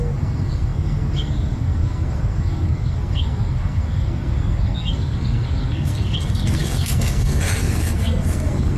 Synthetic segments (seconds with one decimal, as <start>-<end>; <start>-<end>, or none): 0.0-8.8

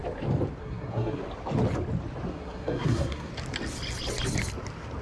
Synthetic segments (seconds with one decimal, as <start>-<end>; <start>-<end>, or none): 0.6-1.2; 2.3-3.3

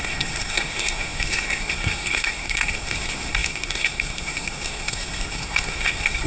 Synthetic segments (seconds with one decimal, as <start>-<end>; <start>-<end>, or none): 0.0-6.3

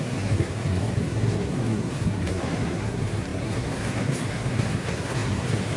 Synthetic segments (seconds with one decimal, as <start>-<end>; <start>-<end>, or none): 0.0-5.8